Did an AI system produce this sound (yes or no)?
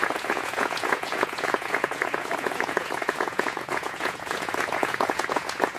yes